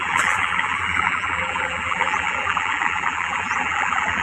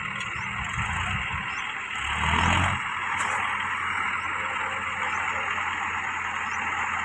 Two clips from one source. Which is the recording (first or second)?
second